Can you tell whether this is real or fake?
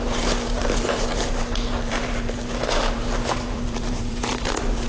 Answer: fake